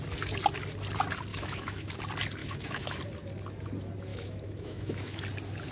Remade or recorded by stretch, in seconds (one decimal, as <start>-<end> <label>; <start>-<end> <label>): 0.0-1.3 recorded; 1.3-1.9 remade; 1.9-2.4 recorded; 2.4-3.0 remade; 3.0-4.1 recorded; 4.1-5.2 remade; 5.2-5.7 recorded